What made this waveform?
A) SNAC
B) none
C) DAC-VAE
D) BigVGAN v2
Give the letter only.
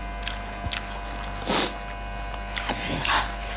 B